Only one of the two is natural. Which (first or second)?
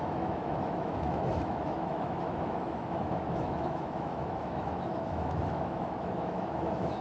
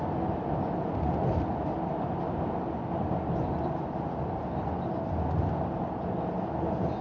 second